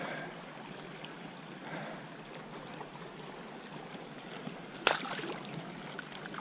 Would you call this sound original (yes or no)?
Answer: yes